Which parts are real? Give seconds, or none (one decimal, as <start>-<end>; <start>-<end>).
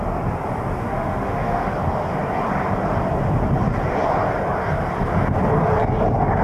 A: 0.0-0.8; 1.7-6.4